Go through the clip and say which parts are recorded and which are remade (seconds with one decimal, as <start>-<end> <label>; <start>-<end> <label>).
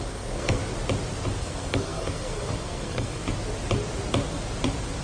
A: 0.0-0.6 remade; 0.6-1.4 recorded; 1.4-3.2 remade; 3.2-5.0 recorded